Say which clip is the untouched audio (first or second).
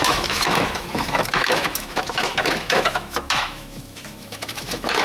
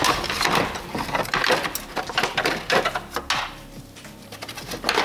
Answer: second